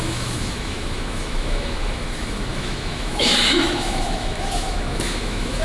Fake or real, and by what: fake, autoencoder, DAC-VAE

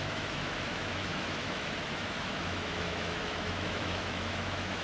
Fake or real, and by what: fake, autoencoder, DAC-VAE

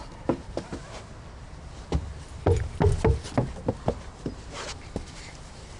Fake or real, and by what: real